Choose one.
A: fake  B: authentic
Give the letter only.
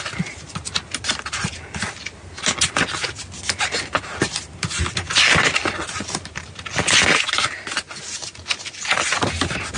B